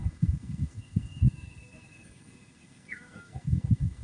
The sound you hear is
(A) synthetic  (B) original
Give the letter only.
A